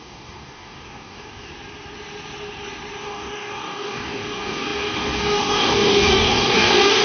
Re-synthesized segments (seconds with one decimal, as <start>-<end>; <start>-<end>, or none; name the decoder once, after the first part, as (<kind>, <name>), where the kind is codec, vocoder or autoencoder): 0.0-1.5 (codec, DAC); 3.0-7.0